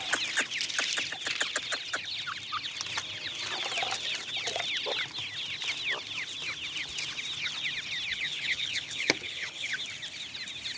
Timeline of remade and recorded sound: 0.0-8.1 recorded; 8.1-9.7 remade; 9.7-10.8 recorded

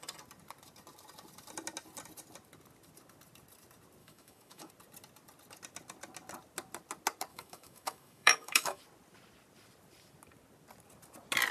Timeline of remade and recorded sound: 0.0-4.0 recorded; 4.0-4.7 remade; 4.7-7.3 recorded; 7.3-8.8 remade; 8.8-11.5 recorded

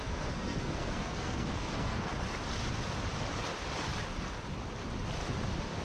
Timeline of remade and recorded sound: 0.0-2.1 remade; 2.1-5.8 recorded

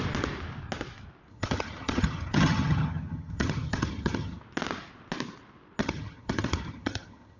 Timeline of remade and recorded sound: 0.0-1.3 recorded; 1.3-4.4 remade; 4.4-5.8 recorded; 5.8-7.4 remade

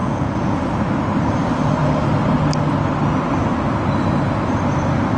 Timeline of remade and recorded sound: 0.0-0.7 remade; 0.7-5.2 recorded

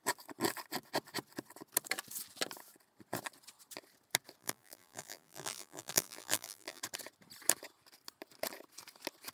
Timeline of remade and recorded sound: 0.0-4.4 recorded; 4.4-6.8 remade; 6.8-9.3 recorded